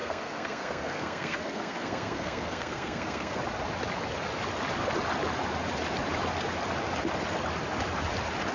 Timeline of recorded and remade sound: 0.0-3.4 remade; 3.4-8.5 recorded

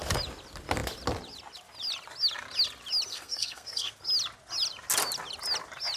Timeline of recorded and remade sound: 0.0-3.1 recorded; 3.1-3.9 remade; 3.9-6.0 recorded